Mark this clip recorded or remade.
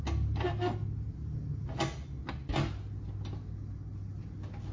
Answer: recorded